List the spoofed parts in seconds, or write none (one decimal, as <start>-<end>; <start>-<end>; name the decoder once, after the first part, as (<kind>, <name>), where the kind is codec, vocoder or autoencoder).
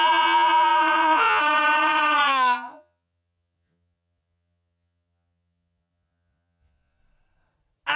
0.0-7.0 (vocoder, Vocos)